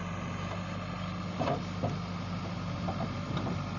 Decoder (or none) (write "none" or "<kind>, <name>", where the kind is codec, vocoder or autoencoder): none